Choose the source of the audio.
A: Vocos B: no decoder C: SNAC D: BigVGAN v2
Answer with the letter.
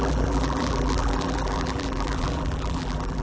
D